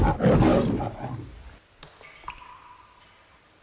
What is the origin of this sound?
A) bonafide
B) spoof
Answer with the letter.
A